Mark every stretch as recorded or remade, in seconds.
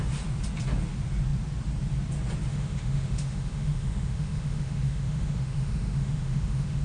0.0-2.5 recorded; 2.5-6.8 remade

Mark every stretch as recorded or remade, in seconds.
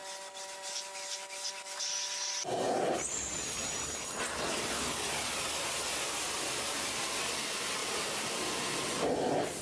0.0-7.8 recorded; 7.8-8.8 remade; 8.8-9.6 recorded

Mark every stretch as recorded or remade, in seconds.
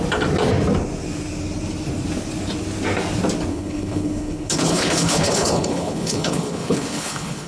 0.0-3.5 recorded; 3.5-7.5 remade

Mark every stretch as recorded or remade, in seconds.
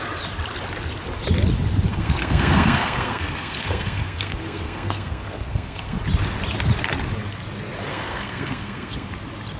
0.0-1.9 recorded; 1.9-6.0 remade; 6.0-7.9 recorded; 7.9-9.1 remade; 9.1-9.6 recorded